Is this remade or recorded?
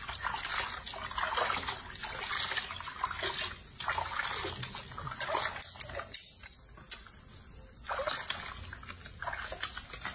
recorded